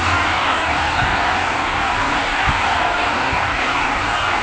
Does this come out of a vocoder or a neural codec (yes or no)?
yes